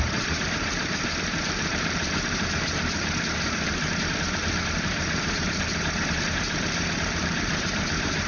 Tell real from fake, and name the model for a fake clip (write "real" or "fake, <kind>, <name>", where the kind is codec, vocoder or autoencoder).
fake, vocoder, BigVGAN v2